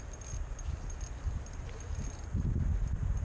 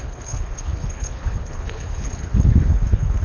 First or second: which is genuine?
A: first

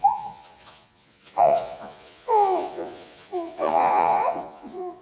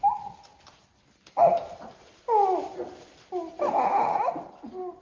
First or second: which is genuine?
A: second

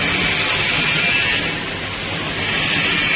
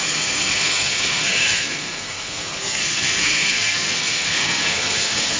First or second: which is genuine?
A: first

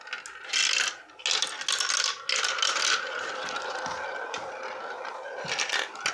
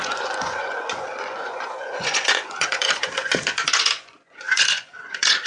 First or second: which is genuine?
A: first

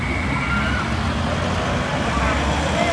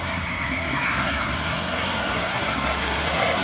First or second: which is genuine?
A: first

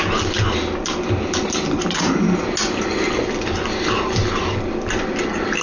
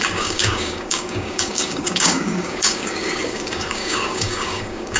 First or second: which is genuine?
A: first